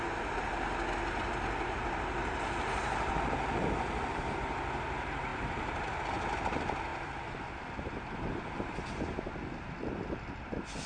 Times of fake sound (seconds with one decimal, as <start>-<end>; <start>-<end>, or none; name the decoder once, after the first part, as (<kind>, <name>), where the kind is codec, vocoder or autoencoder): 5.3-6.0 (vocoder, BigVGAN v2); 6.9-7.5